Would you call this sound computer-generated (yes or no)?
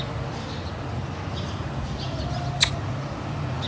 no